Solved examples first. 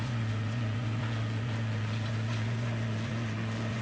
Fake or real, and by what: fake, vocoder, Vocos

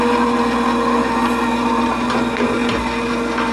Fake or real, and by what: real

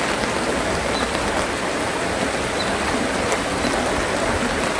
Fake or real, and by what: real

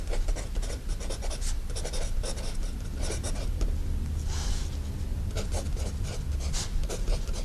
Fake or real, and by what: real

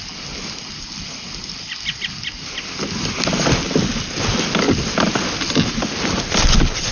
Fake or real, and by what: real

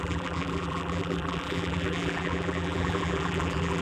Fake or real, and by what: fake, vocoder, BigVGAN v2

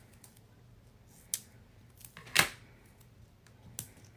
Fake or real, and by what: real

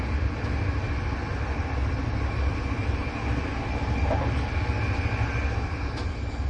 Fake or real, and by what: real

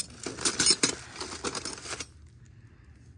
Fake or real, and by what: real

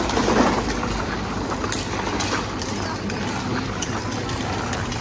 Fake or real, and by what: real